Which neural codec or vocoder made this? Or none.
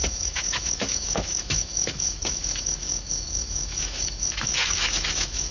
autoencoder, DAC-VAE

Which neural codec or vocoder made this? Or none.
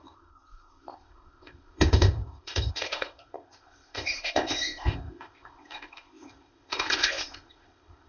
codec, ZipCodec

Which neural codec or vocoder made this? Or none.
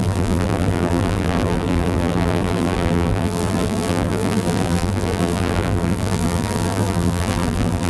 vocoder, BigVGAN v2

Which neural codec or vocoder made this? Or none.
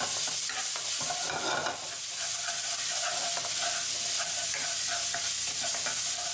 none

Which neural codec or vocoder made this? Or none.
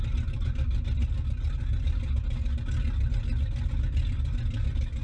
none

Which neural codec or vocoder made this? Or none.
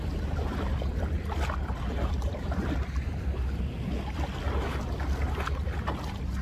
none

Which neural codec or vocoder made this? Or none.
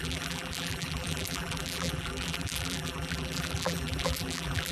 vocoder, BigVGAN v2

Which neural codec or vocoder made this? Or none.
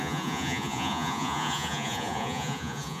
vocoder, Vocos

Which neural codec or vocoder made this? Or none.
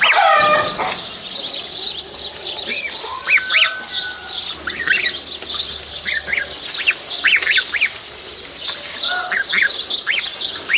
none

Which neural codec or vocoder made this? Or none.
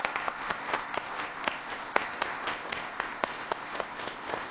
codec, ZipCodec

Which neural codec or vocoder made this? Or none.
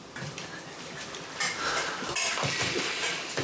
none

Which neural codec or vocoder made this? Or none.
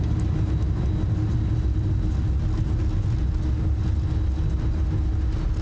none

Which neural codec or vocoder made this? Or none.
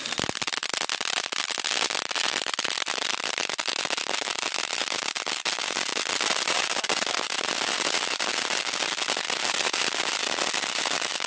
none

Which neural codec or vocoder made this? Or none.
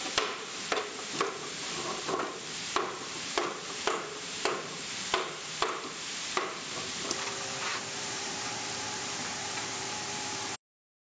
vocoder, BigVGAN v2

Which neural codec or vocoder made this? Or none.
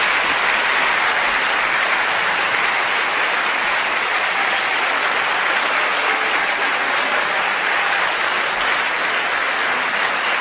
none